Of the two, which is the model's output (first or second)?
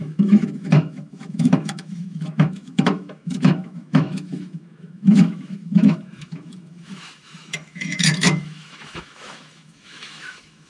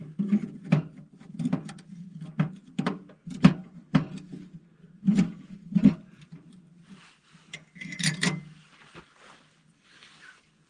first